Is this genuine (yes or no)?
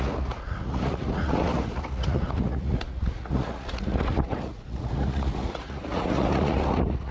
no